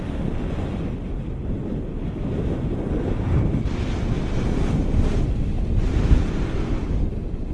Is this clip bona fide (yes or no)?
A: yes